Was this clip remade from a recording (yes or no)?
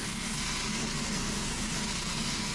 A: yes